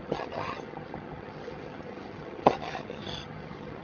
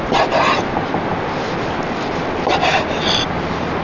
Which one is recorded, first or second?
second